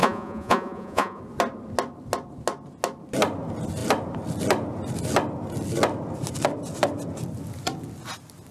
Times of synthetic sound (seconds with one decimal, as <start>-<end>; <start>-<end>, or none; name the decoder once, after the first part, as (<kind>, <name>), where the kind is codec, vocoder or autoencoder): 0.0-1.2 (vocoder, Vocos)

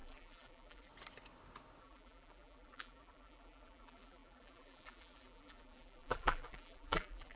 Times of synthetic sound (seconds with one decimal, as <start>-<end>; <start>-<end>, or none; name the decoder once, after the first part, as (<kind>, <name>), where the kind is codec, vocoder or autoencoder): 0.0-0.9 (vocoder, BigVGAN v2); 1.8-7.4

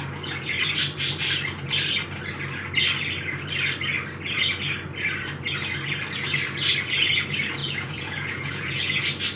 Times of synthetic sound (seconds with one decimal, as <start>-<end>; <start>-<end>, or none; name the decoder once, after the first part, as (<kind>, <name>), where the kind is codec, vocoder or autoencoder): 7.6-9.0 (vocoder, Vocos)

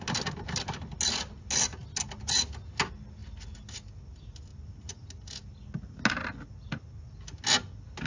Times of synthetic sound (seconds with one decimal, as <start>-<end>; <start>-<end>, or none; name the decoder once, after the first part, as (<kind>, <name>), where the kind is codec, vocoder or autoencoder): none